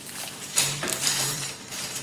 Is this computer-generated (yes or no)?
yes